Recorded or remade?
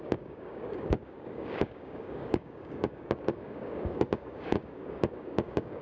remade